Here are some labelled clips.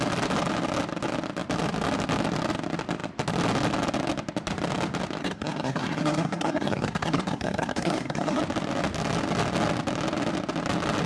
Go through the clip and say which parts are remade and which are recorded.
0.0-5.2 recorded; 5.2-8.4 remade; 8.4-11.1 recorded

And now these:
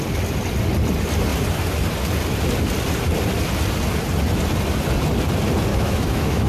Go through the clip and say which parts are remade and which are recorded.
0.0-5.7 recorded; 5.7-6.5 remade

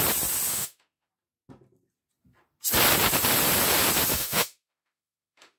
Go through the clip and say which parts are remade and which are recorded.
0.0-0.5 recorded; 0.5-1.1 remade; 1.1-4.1 recorded; 4.1-5.6 remade

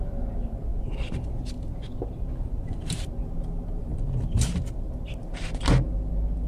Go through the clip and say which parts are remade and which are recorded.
0.0-6.5 recorded

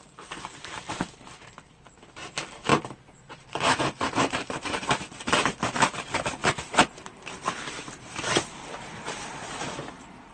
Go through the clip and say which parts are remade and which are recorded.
0.0-2.7 recorded; 2.7-5.1 remade; 5.1-6.4 recorded; 6.4-9.9 remade; 9.9-10.3 recorded

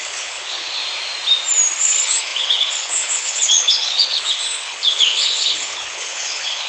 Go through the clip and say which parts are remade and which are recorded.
0.0-0.8 remade; 0.8-1.8 recorded; 1.8-6.7 remade